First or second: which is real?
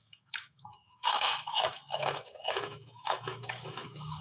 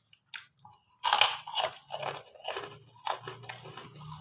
second